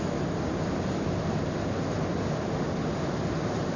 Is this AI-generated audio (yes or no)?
no